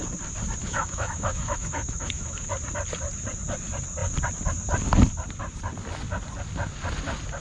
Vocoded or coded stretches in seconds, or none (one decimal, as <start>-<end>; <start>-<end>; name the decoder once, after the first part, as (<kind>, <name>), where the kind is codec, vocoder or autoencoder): 0.6-2.5 (autoencoder, DAC-VAE)